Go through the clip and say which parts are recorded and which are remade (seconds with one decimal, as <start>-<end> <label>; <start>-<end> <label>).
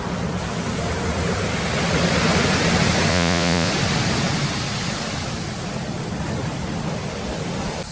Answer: 0.0-3.1 recorded; 3.1-3.7 remade; 3.7-7.9 recorded